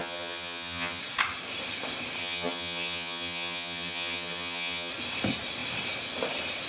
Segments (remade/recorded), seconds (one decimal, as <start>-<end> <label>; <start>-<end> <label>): 0.0-1.0 remade; 1.0-2.2 recorded; 2.2-4.9 remade; 4.9-6.7 recorded